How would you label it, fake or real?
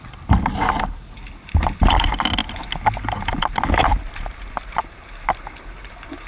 real